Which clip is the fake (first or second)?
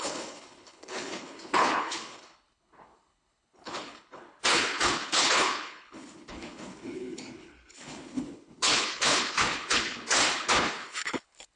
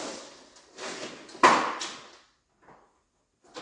first